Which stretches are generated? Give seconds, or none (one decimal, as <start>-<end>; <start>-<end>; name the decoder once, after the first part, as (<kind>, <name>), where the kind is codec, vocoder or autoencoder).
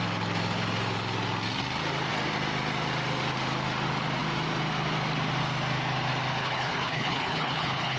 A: 6.4-8.0 (codec, HILCodec)